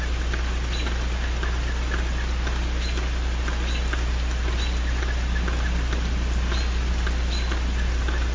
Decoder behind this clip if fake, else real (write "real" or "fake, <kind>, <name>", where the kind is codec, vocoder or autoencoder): real